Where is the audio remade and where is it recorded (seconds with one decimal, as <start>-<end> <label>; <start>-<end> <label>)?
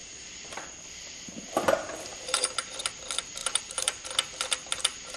0.0-0.6 remade; 0.6-2.1 recorded; 2.1-2.7 remade; 2.7-3.4 recorded; 3.4-4.1 remade; 4.1-5.2 recorded